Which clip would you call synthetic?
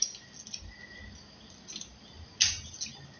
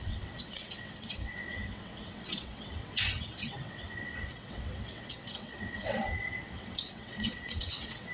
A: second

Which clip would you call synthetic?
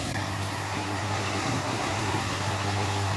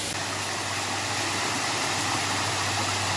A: first